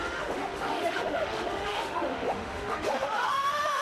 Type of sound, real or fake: fake